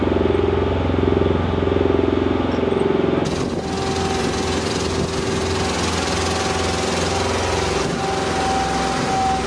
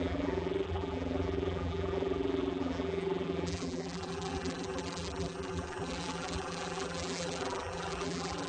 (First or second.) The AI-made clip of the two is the second